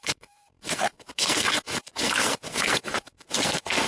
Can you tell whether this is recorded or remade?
remade